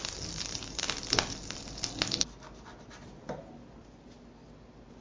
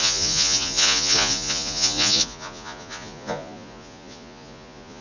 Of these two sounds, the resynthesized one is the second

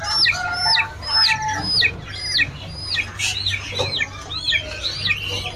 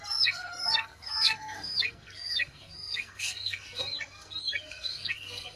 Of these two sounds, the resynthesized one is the second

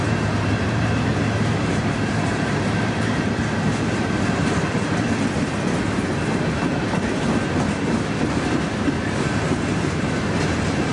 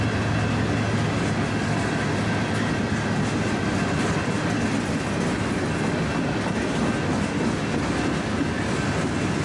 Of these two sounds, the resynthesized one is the first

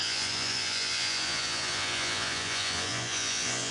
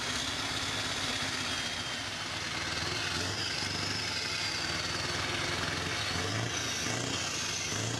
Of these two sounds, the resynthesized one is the first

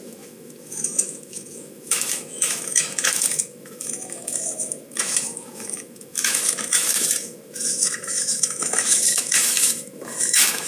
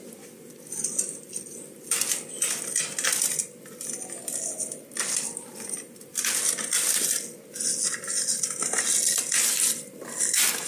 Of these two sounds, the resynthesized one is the first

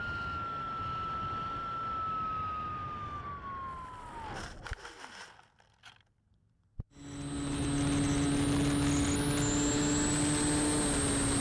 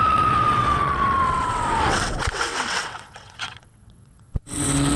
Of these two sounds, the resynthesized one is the second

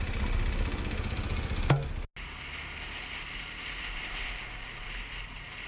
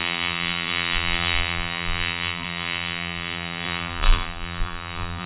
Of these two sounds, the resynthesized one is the second